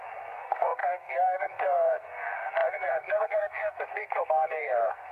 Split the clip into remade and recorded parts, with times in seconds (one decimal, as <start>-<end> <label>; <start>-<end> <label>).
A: 0.0-5.1 remade